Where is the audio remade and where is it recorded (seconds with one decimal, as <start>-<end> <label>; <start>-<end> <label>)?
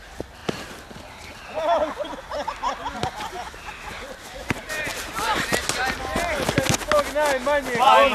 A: 0.0-8.1 recorded